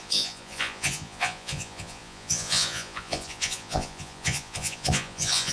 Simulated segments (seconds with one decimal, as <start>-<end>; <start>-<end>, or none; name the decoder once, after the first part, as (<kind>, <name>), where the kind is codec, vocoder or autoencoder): 0.0-5.5 (vocoder, Vocos)